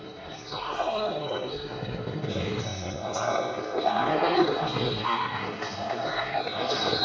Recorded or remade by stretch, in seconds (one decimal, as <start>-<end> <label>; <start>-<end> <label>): 0.0-7.0 remade